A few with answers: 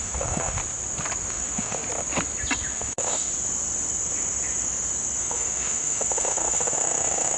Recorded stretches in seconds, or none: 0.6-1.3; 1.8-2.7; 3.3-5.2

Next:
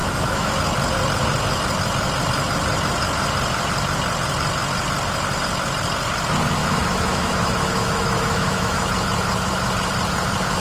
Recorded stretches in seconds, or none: 0.5-6.6; 8.9-10.6

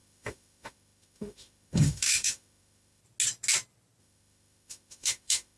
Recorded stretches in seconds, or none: 3.0-4.0

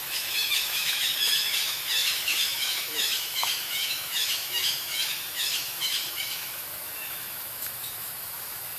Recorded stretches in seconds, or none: none